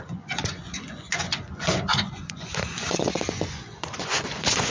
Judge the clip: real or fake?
fake